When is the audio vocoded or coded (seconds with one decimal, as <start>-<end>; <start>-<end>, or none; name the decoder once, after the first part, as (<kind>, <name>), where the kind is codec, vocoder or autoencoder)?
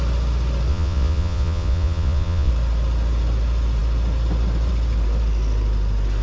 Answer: 0.7-2.5 (vocoder, Vocos)